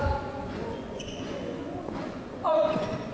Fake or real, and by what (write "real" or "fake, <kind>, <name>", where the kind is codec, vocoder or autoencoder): fake, vocoder, Vocos